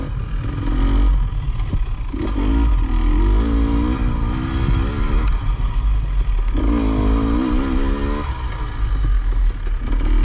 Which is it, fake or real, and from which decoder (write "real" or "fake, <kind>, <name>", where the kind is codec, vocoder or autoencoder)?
real